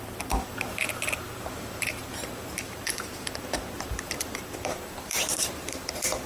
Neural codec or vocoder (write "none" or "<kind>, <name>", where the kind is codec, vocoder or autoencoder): vocoder, BigVGAN v2